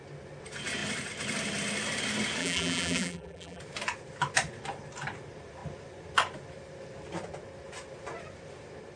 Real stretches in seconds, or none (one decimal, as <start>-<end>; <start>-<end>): 0.0-2.4; 3.6-9.0